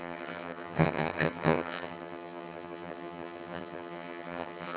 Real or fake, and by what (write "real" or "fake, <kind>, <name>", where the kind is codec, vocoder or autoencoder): fake, vocoder, HiFi-GAN